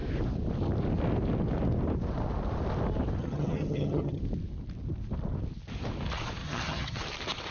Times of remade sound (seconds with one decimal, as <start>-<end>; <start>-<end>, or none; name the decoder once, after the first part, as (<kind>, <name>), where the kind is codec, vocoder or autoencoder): 3.2-4.2 (vocoder, HiFi-GAN); 6.4-7.0